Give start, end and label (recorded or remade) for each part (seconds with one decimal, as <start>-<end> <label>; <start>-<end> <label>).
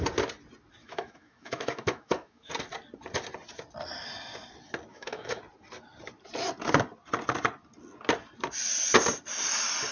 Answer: 0.0-0.8 recorded; 0.8-2.5 remade; 2.5-4.9 recorded; 4.9-5.4 remade; 5.4-9.9 recorded